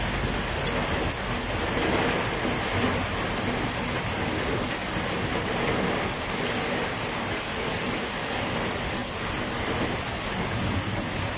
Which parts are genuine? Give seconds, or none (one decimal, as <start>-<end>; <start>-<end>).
0.0-11.4